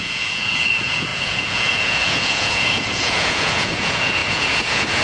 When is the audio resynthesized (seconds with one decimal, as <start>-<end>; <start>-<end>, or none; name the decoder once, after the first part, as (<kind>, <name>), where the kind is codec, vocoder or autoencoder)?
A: 0.0-5.0 (vocoder, Vocos)